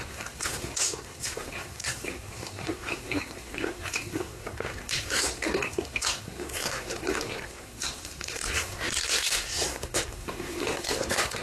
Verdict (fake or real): fake